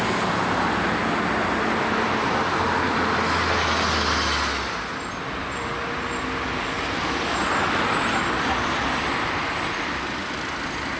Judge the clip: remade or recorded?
recorded